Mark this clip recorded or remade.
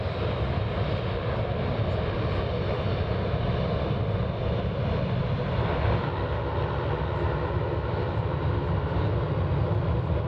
recorded